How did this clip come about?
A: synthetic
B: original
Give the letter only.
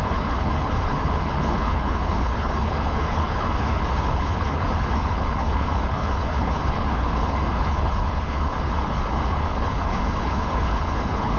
A